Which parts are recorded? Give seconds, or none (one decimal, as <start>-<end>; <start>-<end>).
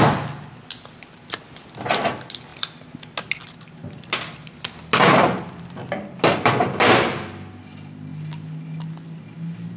0.0-9.8